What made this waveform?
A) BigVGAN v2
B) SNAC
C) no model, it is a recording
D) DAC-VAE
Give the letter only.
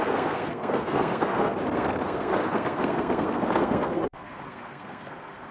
B